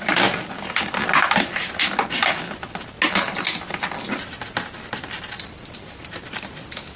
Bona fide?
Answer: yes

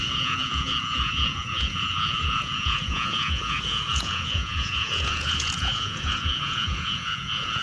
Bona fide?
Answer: no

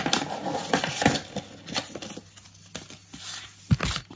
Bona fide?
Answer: yes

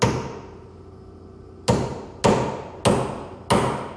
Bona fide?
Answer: yes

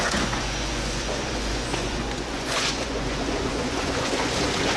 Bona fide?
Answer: no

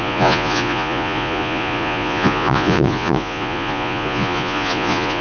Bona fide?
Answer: no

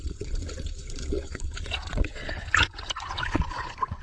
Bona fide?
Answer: no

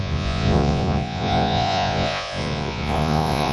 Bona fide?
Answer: no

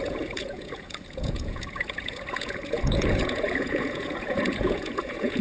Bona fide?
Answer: no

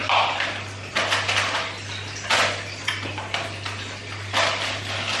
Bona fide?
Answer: yes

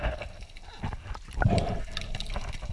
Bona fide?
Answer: yes